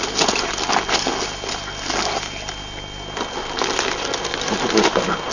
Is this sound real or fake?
real